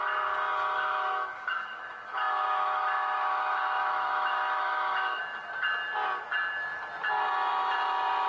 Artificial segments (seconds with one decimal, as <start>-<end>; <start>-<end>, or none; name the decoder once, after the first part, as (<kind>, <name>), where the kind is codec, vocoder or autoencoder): 0.5-5.2 (autoencoder, DAC-VAE)